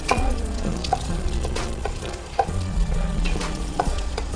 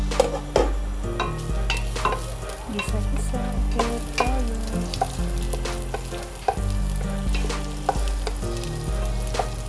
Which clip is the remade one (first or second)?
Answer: first